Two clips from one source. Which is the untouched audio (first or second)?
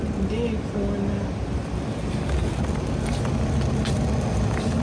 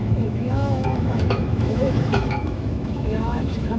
first